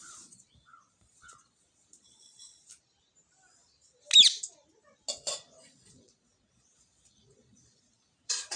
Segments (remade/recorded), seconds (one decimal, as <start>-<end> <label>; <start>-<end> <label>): 0.0-2.7 remade; 2.7-5.3 recorded; 5.3-8.6 remade